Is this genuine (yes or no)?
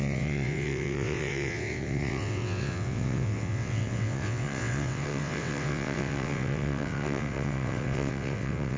no